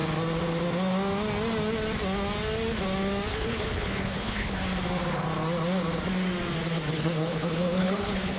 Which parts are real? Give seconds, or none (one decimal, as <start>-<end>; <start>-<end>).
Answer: 0.0-3.3; 4.6-6.9